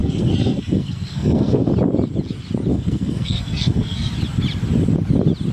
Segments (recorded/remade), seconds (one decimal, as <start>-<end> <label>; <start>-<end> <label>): 0.0-1.7 remade; 1.7-2.7 recorded; 2.7-4.1 remade; 4.1-5.5 recorded